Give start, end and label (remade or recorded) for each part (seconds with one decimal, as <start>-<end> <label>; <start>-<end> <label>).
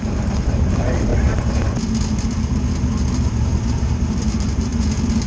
0.0-1.1 remade; 1.1-3.1 recorded; 3.1-4.7 remade; 4.7-5.3 recorded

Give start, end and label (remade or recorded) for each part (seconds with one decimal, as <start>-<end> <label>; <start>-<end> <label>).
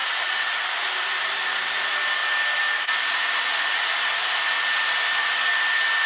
0.0-0.5 remade; 0.5-6.1 recorded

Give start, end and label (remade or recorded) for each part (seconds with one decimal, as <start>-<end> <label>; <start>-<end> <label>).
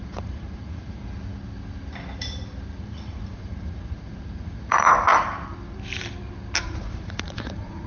0.0-1.0 remade; 1.0-2.8 recorded; 2.8-5.1 remade; 5.1-6.6 recorded; 6.6-7.9 remade